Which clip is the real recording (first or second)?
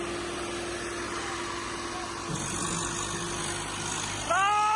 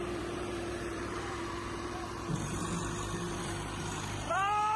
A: first